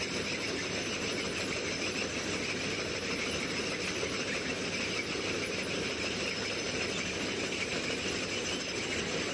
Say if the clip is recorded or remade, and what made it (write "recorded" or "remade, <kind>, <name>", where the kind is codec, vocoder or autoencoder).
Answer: recorded